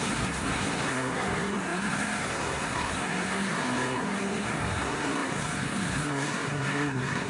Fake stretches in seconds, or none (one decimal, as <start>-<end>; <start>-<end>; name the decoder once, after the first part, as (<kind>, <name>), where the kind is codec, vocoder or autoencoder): 0.0-7.3 (codec, SNAC)